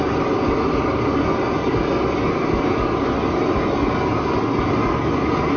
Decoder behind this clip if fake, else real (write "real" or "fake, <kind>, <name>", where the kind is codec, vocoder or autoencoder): real